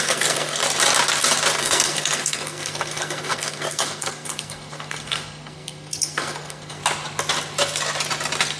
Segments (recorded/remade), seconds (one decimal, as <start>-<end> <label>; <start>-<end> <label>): 0.0-0.6 remade; 0.6-1.6 recorded; 1.6-6.8 remade; 6.8-8.6 recorded